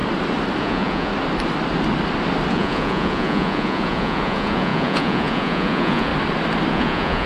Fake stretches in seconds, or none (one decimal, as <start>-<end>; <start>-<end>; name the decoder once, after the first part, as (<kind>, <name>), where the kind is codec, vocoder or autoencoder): 0.6-1.1 (vocoder, Vocos); 2.5-6.1; 6.7-7.3